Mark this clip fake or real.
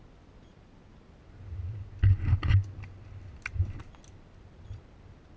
real